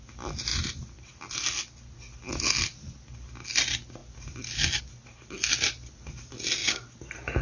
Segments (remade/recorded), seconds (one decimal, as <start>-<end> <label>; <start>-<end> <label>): 0.0-7.4 recorded